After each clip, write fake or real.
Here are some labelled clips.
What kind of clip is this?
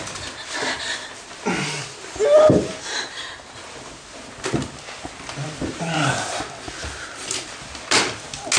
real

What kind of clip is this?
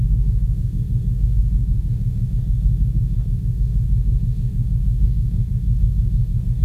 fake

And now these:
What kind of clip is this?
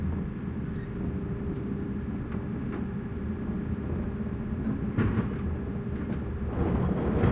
real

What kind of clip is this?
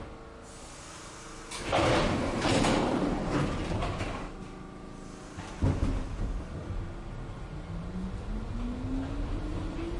real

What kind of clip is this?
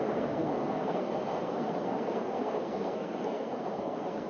fake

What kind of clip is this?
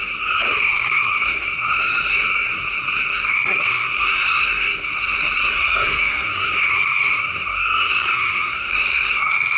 fake